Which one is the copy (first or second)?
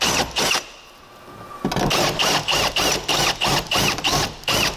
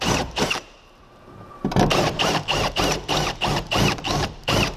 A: second